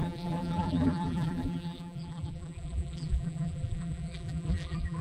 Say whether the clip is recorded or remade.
remade